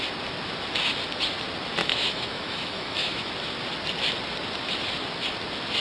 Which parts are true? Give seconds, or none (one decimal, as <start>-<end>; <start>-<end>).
0.0-1.8; 3.3-5.8